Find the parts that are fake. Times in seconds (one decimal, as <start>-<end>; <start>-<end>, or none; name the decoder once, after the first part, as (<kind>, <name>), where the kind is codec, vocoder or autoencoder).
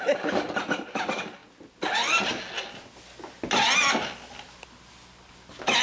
none